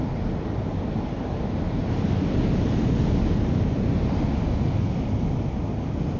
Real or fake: real